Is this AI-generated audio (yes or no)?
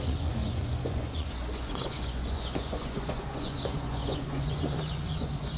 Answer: yes